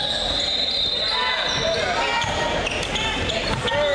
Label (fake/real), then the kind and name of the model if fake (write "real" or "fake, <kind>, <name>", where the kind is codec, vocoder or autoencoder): real